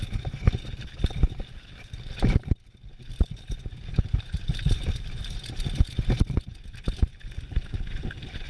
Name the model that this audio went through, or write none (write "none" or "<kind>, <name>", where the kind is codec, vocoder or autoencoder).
none